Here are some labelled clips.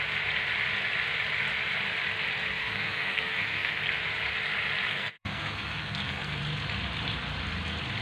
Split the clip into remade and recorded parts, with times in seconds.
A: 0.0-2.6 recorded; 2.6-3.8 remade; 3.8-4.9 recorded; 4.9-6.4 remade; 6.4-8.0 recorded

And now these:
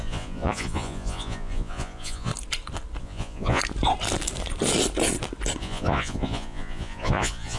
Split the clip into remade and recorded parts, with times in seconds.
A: 0.0-2.3 remade; 2.3-3.0 recorded; 3.0-3.6 remade; 3.6-5.6 recorded; 5.6-7.6 remade

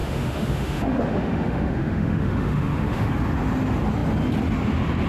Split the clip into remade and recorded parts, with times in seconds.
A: 0.0-3.1 remade; 3.1-5.1 recorded

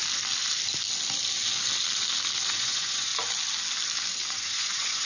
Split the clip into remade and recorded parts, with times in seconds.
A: 0.0-2.5 recorded; 2.5-3.1 remade; 3.1-4.3 recorded; 4.3-5.1 remade